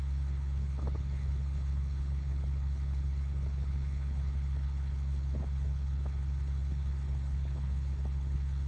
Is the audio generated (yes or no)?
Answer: yes